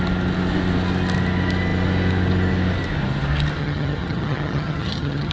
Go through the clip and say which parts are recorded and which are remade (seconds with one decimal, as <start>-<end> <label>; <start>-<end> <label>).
0.0-3.6 recorded; 3.6-5.3 remade